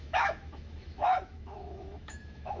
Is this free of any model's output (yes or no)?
no